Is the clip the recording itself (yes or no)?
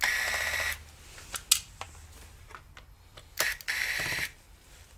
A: yes